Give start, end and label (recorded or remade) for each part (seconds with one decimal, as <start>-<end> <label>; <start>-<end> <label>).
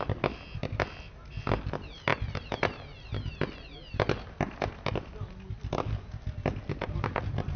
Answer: 0.0-7.6 recorded